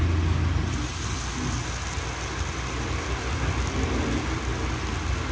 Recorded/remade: recorded